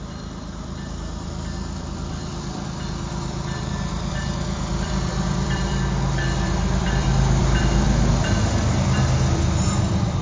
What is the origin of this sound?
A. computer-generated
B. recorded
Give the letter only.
A